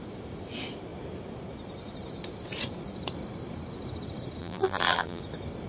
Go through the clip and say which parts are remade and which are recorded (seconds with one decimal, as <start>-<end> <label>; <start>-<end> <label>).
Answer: 0.0-4.4 recorded; 4.4-5.2 remade; 5.2-5.7 recorded